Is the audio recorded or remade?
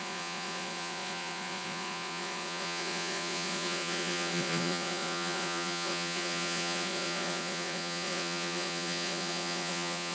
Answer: remade